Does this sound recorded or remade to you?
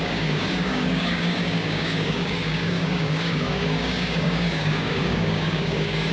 remade